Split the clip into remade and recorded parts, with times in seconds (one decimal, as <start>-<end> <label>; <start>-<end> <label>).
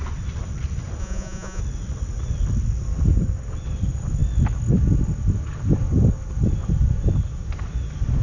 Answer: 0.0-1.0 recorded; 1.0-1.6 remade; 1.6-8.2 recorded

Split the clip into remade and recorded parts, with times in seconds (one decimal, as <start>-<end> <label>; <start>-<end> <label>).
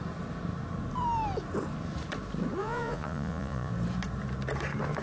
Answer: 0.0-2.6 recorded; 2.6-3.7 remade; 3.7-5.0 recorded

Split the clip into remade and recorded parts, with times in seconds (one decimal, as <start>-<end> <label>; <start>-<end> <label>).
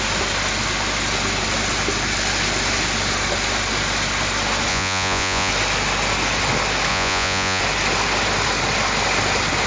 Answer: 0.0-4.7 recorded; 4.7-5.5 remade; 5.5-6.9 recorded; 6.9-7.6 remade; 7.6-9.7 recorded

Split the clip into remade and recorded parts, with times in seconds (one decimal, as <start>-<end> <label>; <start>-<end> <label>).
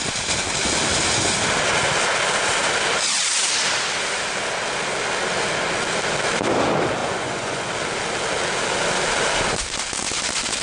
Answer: 0.0-7.0 recorded; 7.0-7.7 remade; 7.7-10.6 recorded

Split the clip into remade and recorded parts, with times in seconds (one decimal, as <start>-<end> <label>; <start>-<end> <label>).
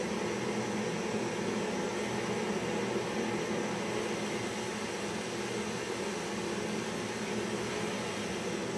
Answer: 0.0-8.8 recorded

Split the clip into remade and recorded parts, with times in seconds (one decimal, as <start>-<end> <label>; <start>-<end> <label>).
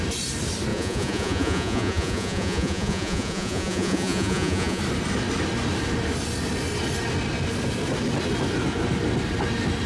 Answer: 0.0-0.7 recorded; 0.7-4.8 remade; 4.8-9.9 recorded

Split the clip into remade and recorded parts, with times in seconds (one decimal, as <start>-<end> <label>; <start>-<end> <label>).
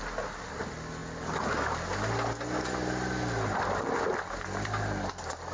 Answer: 0.0-5.5 recorded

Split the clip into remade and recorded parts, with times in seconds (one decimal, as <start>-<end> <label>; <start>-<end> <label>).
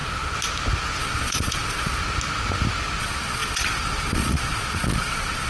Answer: 0.0-1.0 recorded; 1.0-2.0 remade; 2.0-3.0 recorded; 3.0-5.5 remade